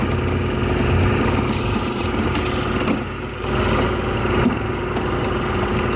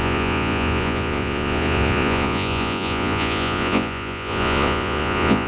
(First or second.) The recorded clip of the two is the first